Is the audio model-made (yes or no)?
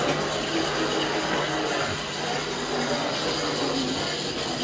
no